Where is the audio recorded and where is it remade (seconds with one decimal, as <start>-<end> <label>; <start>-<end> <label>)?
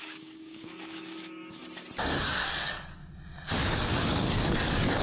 0.0-1.6 remade; 1.6-2.2 recorded; 2.2-3.0 remade; 3.0-3.6 recorded; 3.6-5.0 remade